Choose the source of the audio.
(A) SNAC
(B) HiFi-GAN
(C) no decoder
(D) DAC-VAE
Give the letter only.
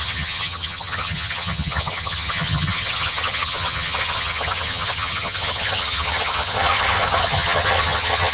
B